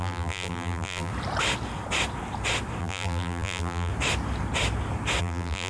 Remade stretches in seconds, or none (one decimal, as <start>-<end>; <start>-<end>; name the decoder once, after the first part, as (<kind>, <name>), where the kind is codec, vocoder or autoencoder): 0.0-1.1 (vocoder, BigVGAN v2); 2.8-3.9; 5.2-5.7